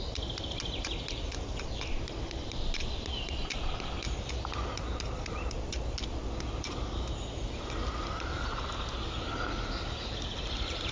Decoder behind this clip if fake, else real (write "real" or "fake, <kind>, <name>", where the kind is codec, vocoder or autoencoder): real